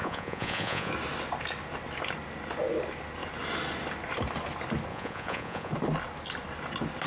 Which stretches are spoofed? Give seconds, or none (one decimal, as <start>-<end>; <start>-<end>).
0.0-0.9; 4.9-5.7